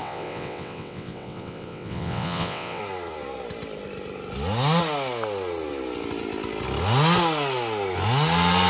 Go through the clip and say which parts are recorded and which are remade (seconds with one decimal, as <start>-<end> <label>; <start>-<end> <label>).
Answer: 0.0-2.8 remade; 2.8-8.7 recorded